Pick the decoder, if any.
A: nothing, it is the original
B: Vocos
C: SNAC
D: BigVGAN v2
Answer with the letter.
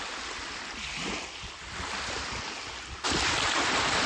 A